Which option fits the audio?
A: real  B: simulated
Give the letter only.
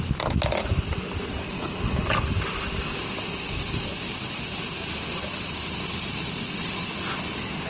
A